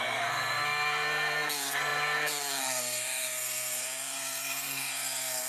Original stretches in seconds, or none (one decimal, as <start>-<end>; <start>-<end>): none